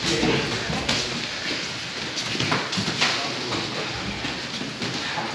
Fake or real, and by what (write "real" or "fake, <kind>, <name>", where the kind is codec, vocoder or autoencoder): real